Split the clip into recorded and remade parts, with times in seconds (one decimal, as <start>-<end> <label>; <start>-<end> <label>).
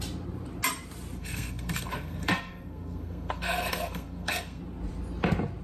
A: 0.0-1.2 recorded; 1.2-4.6 remade; 4.6-5.6 recorded